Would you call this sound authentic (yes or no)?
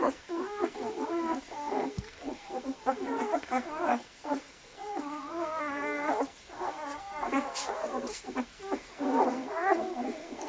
no